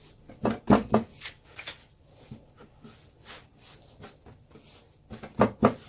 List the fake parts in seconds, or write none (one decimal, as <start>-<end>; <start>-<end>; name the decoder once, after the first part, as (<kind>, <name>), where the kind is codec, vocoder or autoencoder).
none